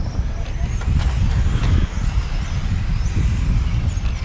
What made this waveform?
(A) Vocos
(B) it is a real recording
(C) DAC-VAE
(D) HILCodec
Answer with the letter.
B